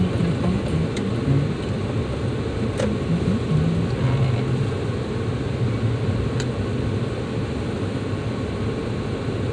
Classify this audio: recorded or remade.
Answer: recorded